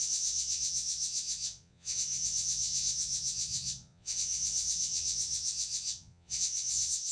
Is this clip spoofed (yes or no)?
yes